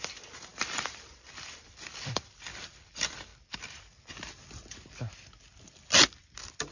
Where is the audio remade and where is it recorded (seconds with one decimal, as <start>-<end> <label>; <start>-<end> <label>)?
0.0-3.3 remade; 3.3-6.7 recorded